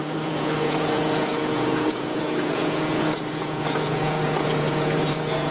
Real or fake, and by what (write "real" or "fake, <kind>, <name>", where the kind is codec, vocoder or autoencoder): fake, vocoder, Vocos